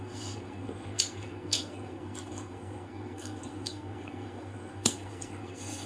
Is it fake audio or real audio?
fake